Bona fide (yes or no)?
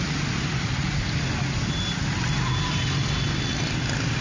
yes